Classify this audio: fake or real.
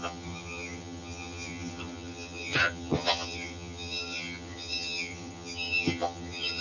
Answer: fake